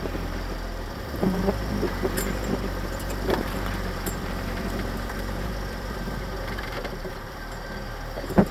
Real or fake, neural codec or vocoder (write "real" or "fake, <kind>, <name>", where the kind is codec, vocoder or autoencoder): fake, vocoder, BigVGAN v2